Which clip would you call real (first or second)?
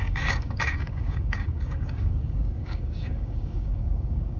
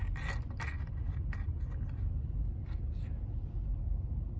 second